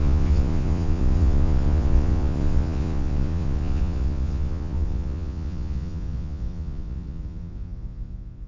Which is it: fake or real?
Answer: fake